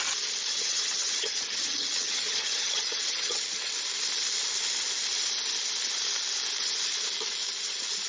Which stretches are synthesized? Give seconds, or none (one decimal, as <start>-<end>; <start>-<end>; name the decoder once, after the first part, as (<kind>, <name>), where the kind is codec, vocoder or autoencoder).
0.5-3.7 (vocoder, HiFi-GAN)